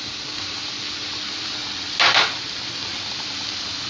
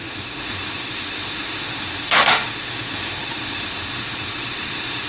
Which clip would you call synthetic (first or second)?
second